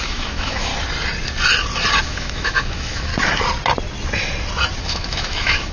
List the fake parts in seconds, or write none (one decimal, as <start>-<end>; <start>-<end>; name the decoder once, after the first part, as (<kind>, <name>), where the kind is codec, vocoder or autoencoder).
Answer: 0.0-0.7 (autoencoder, DAC-VAE); 2.0-3.1; 4.8-5.7